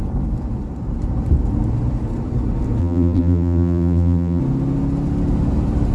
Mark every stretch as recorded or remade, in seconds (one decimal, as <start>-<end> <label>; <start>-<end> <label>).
0.0-2.8 recorded; 2.8-4.4 remade; 4.4-5.9 recorded